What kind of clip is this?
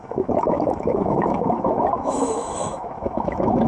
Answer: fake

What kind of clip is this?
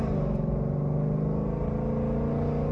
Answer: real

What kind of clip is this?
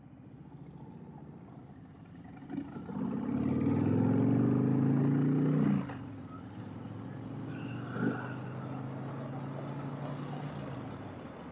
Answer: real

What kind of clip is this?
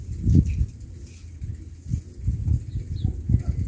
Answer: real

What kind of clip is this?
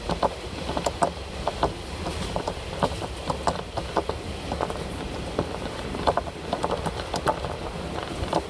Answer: real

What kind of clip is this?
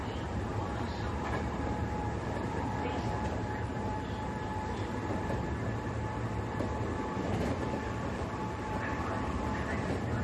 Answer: fake